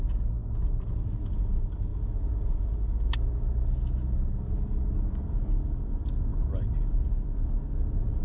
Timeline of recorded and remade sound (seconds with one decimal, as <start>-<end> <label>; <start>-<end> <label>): 0.0-8.2 recorded